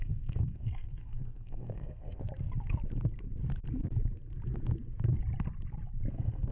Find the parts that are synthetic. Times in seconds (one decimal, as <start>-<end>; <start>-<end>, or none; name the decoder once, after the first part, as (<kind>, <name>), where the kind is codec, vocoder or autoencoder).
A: 0.0-2.2 (codec, SNAC); 6.1-6.5